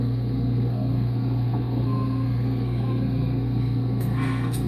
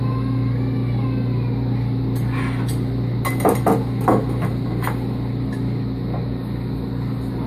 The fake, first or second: first